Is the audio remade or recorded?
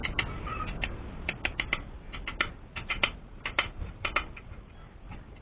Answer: recorded